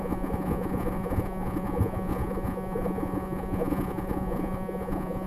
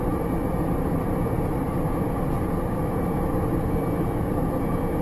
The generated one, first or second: first